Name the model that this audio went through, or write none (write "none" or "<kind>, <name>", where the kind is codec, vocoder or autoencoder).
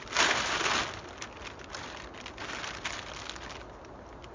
none